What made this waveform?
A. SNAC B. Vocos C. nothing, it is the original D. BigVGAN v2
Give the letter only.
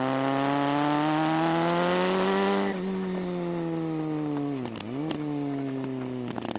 C